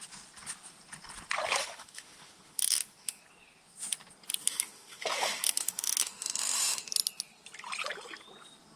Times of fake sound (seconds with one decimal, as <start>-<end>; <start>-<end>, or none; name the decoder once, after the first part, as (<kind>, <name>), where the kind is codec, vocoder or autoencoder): 1.6-3.2 (autoencoder, DAC-VAE); 4.4-6.9